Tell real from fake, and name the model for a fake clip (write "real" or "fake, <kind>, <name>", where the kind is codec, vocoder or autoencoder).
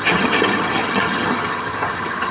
fake, vocoder, HiFi-GAN